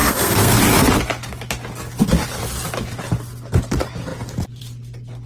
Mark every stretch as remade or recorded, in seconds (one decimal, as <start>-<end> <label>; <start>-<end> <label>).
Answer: 0.0-0.6 remade; 0.6-5.3 recorded